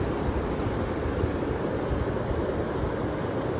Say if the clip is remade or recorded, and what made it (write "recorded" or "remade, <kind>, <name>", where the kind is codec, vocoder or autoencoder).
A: recorded